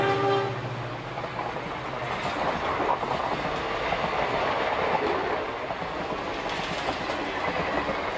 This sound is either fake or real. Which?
real